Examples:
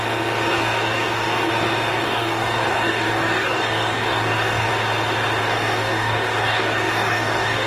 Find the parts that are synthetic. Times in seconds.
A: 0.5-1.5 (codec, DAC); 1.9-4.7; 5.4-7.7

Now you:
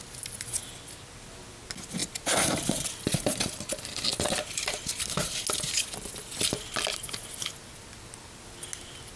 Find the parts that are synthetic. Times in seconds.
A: 2.0-5.3 (vocoder, BigVGAN v2)